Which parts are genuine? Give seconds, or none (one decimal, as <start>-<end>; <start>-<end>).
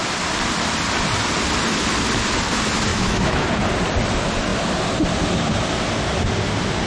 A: 0.0-2.9; 3.5-6.9